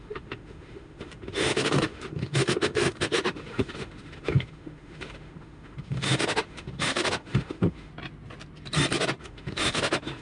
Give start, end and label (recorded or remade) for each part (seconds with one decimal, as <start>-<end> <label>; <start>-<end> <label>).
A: 0.0-7.9 remade; 7.9-9.2 recorded; 9.2-10.2 remade